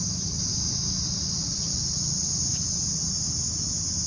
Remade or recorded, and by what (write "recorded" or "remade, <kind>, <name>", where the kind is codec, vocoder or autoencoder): recorded